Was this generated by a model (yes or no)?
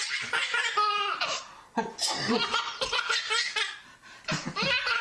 no